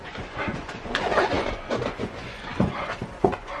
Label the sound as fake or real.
fake